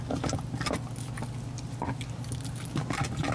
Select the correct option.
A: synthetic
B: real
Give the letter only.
B